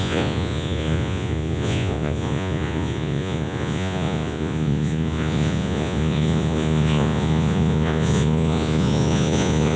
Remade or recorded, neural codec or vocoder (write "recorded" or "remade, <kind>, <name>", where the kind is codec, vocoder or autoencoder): remade, vocoder, Vocos